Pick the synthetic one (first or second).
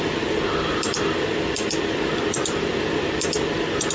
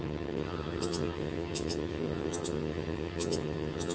second